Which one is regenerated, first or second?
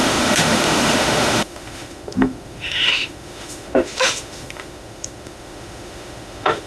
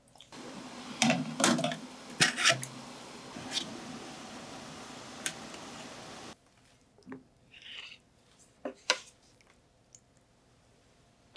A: first